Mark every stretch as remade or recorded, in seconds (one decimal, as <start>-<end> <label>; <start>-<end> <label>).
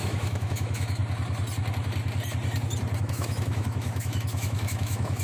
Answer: 0.0-1.0 remade; 1.0-3.0 recorded; 3.0-5.2 remade